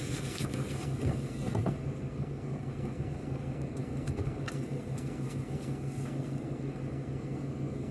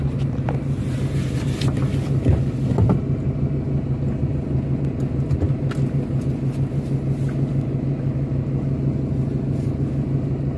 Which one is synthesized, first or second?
first